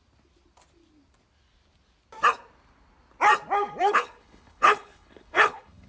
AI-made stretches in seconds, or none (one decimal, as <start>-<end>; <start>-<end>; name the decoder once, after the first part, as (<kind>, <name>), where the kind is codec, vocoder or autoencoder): 3.8-5.9 (codec, HILCodec)